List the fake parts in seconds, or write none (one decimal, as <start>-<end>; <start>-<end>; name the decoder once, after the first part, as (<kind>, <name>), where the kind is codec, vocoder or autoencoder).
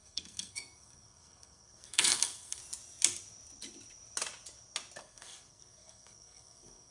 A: 0.0-2.6 (codec, SNAC); 5.0-6.9